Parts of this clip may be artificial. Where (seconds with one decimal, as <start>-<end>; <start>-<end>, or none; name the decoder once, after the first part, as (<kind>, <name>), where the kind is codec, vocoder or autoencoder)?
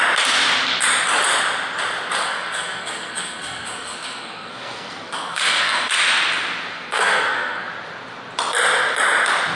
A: 2.2-5.9 (codec, SNAC); 6.7-7.7